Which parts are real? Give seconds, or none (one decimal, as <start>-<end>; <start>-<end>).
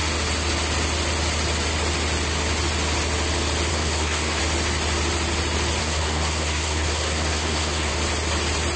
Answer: 0.0-3.7; 4.4-5.8; 7.9-8.8